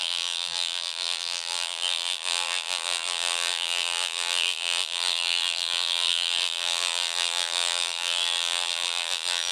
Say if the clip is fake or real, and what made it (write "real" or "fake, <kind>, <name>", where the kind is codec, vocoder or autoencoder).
fake, vocoder, BigVGAN v2